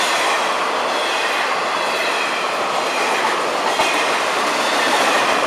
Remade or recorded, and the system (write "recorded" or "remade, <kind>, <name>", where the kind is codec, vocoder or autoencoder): remade, vocoder, BigVGAN v2